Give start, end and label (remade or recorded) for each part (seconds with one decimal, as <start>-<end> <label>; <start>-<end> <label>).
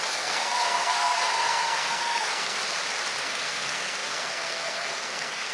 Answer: 0.0-2.6 remade; 2.6-3.2 recorded; 3.2-5.5 remade